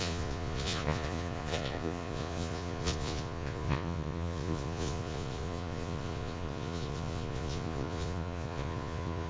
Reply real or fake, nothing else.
fake